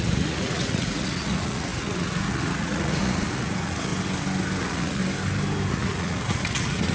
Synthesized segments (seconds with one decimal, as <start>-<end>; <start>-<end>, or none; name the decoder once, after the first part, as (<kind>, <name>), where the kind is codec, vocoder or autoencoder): 0.0-3.9 (vocoder, Vocos); 4.6-5.0; 5.7-6.9

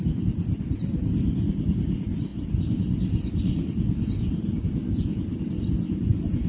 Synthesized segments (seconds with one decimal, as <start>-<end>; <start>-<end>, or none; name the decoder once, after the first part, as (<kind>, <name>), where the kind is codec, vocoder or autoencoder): none

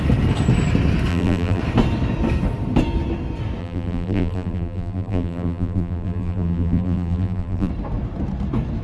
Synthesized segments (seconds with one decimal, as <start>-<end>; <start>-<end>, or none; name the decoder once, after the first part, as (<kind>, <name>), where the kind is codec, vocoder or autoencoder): 1.1-1.6 (vocoder, BigVGAN v2); 3.6-7.7

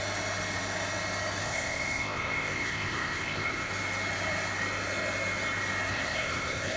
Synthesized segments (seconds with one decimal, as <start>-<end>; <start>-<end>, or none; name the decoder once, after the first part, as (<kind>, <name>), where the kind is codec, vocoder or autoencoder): 1.4-3.7 (codec, ZipCodec); 5.9-6.8

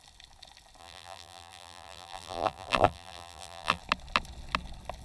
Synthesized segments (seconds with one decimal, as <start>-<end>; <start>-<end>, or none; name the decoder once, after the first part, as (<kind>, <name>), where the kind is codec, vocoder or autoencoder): 0.8-3.8 (vocoder, BigVGAN v2)

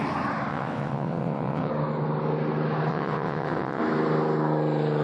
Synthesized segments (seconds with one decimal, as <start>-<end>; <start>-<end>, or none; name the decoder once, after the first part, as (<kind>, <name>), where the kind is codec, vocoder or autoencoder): 0.5-1.7 (vocoder, WaveNeXt); 2.9-3.8

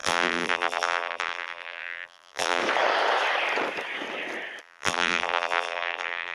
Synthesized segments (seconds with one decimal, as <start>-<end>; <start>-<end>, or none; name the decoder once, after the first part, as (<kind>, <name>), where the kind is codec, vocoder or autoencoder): 0.0-2.6 (vocoder, BigVGAN v2); 4.6-6.3

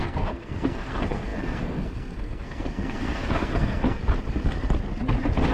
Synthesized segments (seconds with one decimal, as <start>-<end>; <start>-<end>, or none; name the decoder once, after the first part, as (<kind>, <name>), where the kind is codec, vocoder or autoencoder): 0.0-4.0 (codec, SNAC)